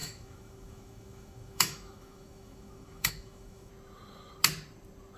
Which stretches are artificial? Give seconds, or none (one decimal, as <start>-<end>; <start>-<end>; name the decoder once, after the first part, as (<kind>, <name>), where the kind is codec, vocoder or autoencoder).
0.0-3.7 (autoencoder, DAC-VAE)